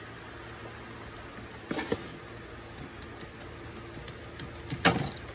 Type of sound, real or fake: real